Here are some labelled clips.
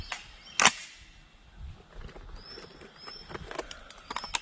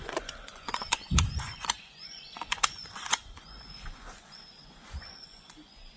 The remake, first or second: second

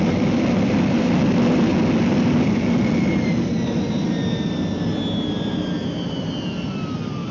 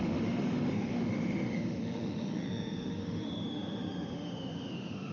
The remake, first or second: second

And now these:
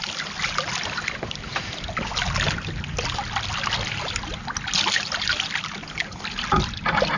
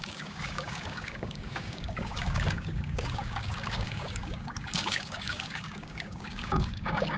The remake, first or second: second